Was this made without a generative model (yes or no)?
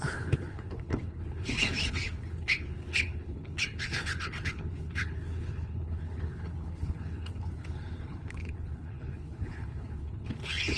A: no